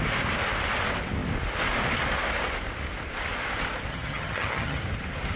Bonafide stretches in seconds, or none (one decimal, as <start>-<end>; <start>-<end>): 0.0-3.9; 4.8-5.4